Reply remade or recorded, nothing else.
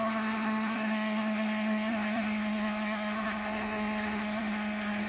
remade